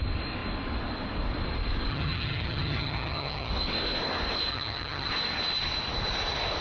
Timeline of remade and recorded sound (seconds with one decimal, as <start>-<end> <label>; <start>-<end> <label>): 0.0-1.9 recorded; 1.9-3.5 remade; 3.5-4.5 recorded; 4.5-5.1 remade; 5.1-6.6 recorded